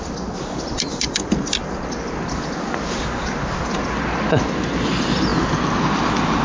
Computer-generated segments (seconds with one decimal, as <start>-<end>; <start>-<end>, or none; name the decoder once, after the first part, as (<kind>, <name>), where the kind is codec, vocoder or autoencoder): none